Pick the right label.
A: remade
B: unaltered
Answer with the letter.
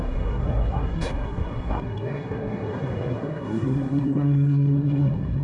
A